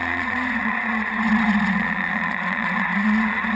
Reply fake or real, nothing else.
fake